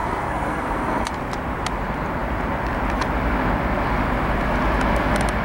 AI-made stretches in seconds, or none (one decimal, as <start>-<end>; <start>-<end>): 0.0-1.1